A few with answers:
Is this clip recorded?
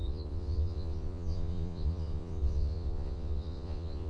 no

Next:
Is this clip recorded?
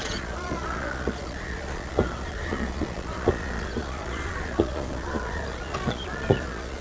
no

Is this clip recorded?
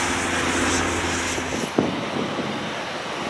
yes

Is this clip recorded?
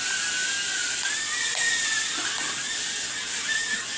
yes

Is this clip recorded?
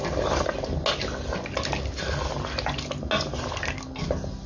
yes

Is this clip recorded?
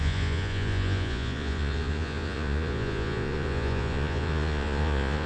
no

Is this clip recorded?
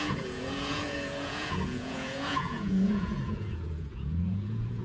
no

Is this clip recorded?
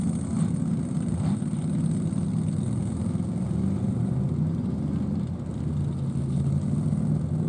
yes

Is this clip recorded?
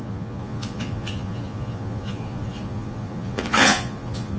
no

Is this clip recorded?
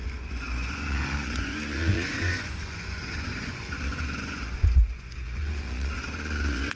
no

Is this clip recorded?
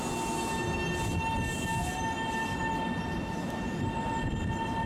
yes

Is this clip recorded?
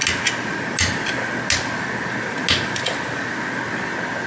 yes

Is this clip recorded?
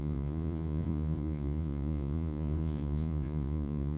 no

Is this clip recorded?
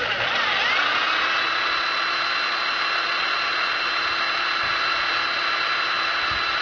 yes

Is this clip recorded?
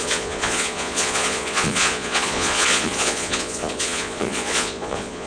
no